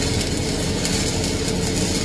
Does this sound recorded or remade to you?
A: recorded